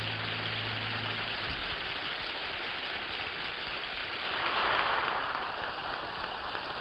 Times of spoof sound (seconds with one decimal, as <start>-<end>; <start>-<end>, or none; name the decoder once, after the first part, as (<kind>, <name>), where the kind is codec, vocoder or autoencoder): 0.0-4.0 (vocoder, BigVGAN v2); 5.1-6.8